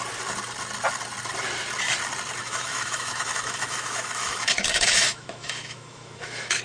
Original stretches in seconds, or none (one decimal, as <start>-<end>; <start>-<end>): 0.0-2.4